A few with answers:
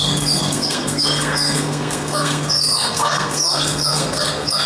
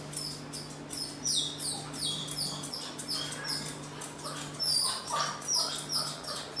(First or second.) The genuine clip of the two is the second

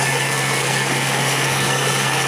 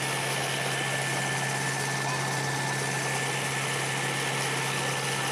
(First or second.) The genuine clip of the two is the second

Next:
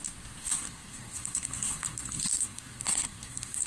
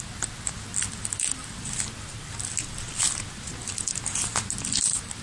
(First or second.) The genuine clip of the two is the second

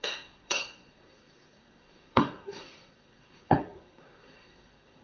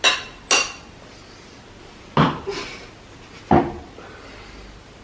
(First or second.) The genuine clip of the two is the second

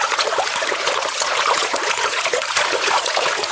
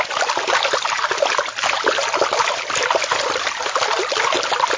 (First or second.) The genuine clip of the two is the second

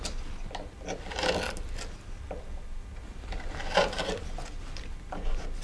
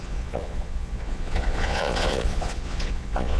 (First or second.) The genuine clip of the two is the first